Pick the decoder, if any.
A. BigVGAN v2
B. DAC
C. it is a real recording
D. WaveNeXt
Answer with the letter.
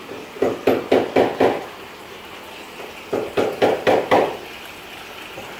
C